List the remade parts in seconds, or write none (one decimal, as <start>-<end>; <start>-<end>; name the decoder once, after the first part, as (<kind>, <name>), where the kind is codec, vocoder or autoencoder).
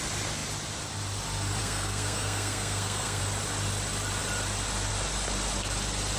1.6-3.2 (codec, SNAC)